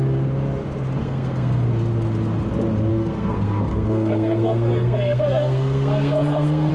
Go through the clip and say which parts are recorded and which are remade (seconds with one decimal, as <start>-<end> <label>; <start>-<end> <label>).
0.0-1.0 recorded; 1.0-1.7 remade; 1.7-2.9 recorded; 2.9-6.7 remade